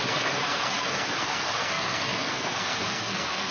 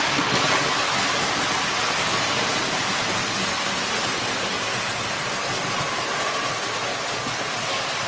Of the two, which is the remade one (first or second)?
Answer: first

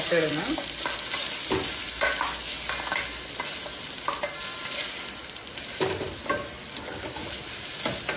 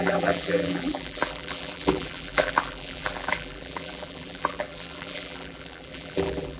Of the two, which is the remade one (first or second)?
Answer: second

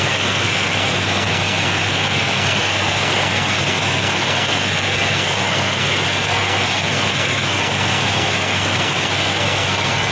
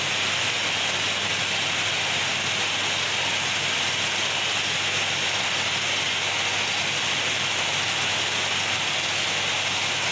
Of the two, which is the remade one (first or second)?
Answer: first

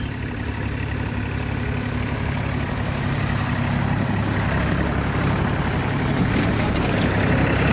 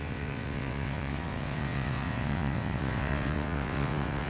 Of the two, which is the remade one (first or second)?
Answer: second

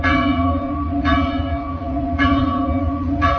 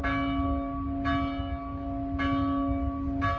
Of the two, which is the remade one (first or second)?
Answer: first